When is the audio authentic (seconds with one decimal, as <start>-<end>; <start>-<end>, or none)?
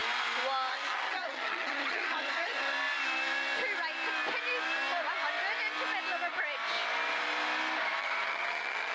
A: 0.0-0.7; 2.7-8.0